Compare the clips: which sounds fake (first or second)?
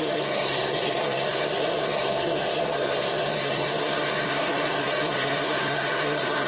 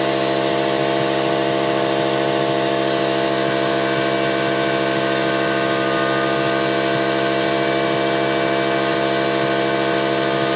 first